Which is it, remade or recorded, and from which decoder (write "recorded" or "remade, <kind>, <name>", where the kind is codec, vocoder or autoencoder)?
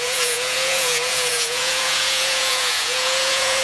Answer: remade, vocoder, Vocos